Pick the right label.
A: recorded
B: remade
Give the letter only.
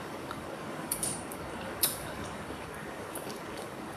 B